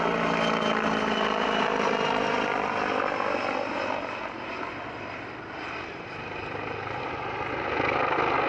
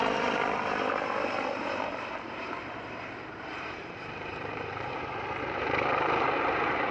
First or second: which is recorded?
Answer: first